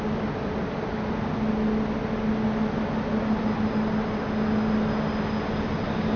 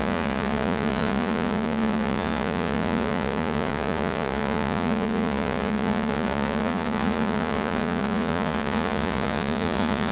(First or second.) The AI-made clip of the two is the second